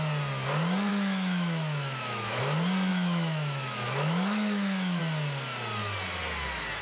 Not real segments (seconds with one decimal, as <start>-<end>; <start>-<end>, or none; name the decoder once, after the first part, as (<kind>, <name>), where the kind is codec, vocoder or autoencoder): 0.9-2.4 (autoencoder, DAC-VAE); 2.9-5.0